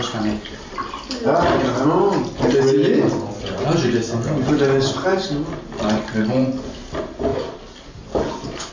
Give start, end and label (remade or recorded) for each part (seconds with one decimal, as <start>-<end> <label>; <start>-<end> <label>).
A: 0.0-8.7 recorded